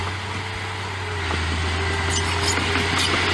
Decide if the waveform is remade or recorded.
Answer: recorded